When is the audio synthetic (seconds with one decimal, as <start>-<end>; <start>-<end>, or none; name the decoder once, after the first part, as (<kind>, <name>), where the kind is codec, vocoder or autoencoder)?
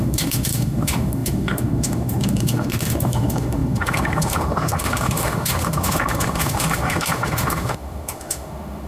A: 0.0-8.9 (autoencoder, DAC-VAE)